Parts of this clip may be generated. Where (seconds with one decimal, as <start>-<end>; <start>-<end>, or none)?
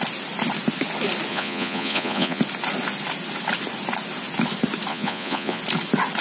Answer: 1.3-2.4; 4.9-5.6